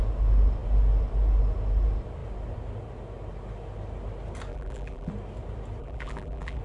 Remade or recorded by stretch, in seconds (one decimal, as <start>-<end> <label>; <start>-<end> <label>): 0.0-4.5 recorded; 4.5-5.1 remade; 5.1-5.8 recorded; 5.8-6.6 remade